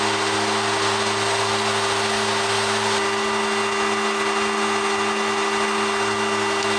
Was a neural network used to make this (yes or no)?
no